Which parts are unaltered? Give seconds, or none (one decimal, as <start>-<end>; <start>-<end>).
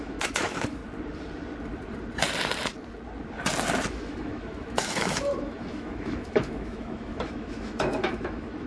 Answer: 0.8-3.9